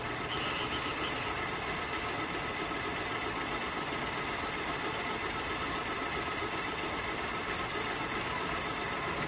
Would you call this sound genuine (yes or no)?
yes